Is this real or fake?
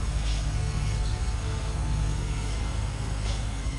fake